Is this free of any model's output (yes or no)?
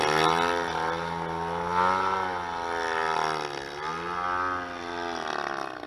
yes